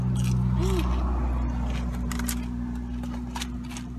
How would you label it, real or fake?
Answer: real